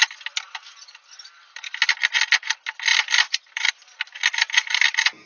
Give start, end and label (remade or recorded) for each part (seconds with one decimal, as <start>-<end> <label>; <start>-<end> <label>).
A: 0.0-2.9 recorded; 2.9-3.7 remade; 3.7-5.3 recorded